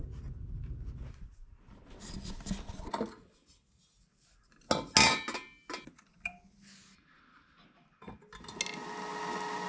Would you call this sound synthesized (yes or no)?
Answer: no